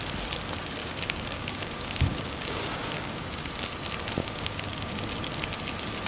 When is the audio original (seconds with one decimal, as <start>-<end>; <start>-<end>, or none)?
0.0-0.8; 3.5-4.2; 4.9-6.1